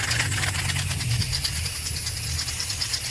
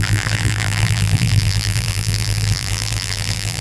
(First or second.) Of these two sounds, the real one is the first